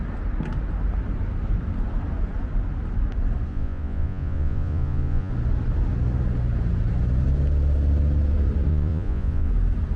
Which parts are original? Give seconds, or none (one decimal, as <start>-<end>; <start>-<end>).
0.0-3.5; 5.3-8.7; 9.5-10.0